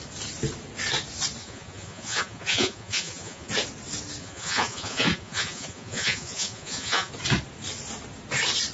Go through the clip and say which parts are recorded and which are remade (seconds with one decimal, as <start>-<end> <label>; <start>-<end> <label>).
0.0-1.4 recorded; 1.4-3.5 remade; 3.5-4.2 recorded; 4.2-7.1 remade; 7.1-8.7 recorded